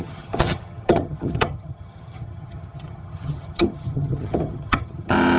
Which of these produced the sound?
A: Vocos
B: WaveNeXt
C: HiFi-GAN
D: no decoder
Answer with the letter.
C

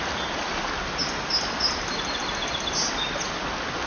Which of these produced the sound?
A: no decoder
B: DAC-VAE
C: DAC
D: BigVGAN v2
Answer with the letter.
A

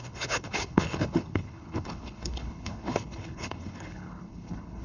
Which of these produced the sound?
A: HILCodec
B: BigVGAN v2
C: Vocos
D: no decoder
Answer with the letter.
A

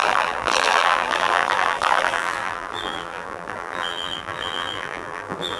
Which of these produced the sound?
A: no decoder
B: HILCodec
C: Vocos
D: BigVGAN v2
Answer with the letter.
D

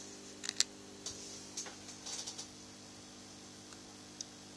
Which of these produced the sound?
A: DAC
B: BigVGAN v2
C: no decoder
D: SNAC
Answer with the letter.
C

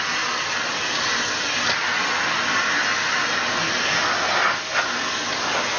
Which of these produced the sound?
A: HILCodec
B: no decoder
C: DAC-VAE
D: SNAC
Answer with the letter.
B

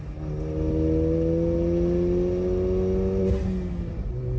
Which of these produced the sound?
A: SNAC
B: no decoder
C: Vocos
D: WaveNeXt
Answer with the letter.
B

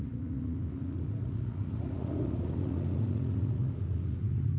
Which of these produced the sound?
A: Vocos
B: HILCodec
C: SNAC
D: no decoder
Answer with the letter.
A